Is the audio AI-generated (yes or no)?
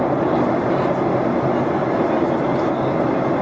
no